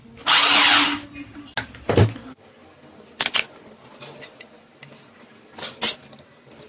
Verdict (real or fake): real